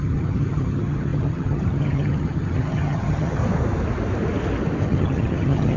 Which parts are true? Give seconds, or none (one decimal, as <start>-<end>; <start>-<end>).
3.4-4.8